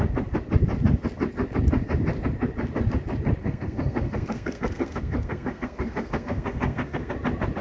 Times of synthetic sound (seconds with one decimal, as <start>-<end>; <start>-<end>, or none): 3.4-7.1